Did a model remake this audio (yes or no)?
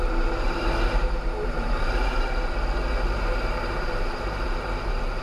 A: yes